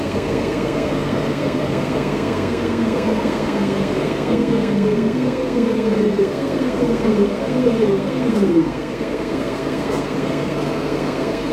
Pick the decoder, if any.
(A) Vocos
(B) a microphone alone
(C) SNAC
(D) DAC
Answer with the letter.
C